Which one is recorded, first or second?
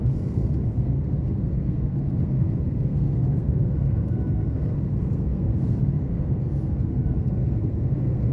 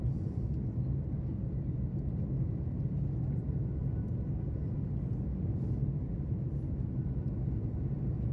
second